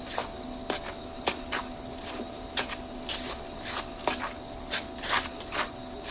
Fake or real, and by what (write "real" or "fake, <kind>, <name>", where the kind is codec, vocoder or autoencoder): real